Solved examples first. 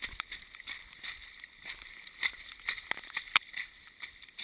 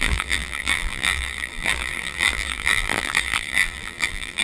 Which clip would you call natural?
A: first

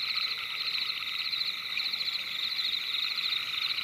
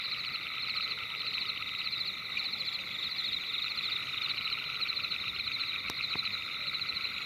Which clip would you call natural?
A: second